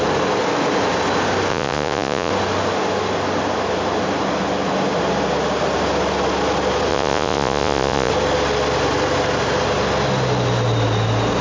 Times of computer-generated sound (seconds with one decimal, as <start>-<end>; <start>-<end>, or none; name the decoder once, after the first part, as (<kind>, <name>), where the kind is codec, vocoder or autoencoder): 1.5-2.3 (vocoder, Vocos); 6.9-8.1